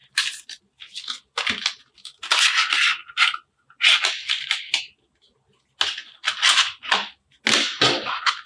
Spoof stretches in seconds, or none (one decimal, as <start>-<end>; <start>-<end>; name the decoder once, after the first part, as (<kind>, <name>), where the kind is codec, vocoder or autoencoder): none